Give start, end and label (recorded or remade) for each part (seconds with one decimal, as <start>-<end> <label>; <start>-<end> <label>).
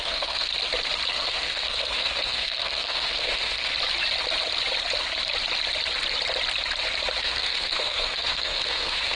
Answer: 0.0-0.5 remade; 0.5-1.1 recorded; 1.1-3.7 remade; 3.7-7.2 recorded; 7.2-9.1 remade